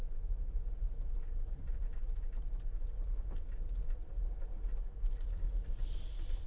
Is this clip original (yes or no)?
yes